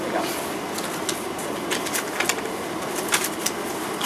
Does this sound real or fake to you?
real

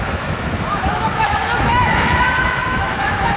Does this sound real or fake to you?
fake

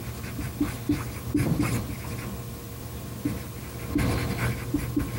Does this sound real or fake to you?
real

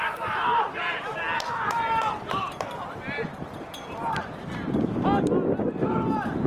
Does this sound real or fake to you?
real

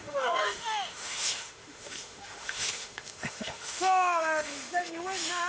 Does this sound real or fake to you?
fake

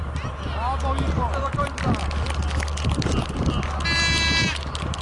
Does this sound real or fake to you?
real